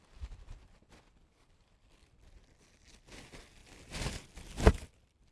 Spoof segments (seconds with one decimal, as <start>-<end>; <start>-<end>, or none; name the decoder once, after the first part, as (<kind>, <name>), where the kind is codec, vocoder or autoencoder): none